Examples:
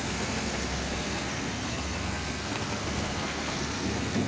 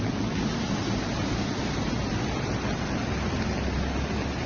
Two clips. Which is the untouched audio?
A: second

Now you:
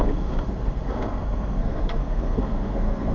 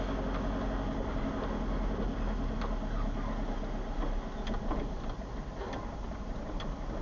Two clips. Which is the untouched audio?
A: second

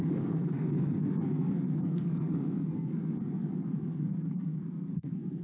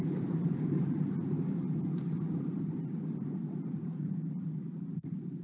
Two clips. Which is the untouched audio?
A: second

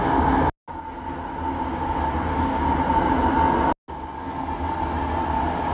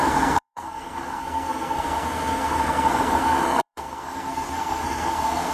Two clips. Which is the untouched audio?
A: first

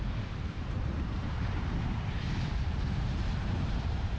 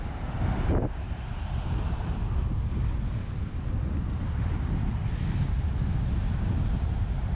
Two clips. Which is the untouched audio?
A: second